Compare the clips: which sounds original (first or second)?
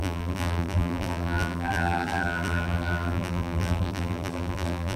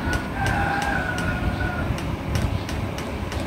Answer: second